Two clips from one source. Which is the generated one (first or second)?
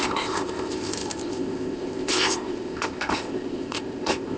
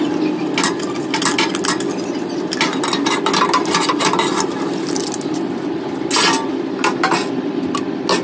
first